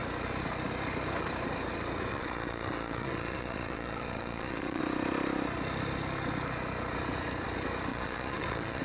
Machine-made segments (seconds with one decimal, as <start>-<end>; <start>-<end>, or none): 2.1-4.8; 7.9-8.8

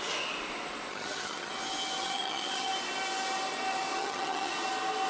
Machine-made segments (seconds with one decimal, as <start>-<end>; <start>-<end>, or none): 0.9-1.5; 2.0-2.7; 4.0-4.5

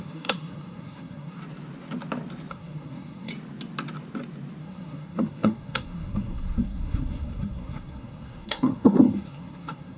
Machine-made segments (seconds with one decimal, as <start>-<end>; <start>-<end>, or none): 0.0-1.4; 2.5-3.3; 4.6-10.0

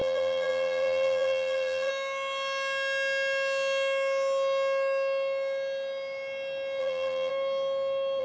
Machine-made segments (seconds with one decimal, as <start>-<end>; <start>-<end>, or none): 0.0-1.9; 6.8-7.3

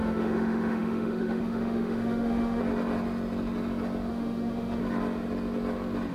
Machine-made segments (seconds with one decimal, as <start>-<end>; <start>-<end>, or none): 0.0-2.6; 4.1-4.8

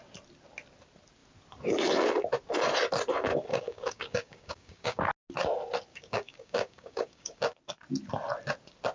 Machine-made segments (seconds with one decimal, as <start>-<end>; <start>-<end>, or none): 3.5-5.0; 5.9-7.4